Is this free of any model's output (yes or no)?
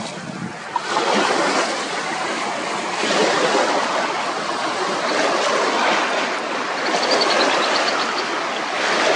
yes